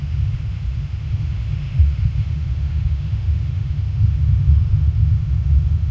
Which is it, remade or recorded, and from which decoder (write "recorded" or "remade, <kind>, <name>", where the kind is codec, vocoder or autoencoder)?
remade, autoencoder, DAC-VAE